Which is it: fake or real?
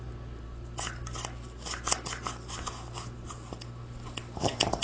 real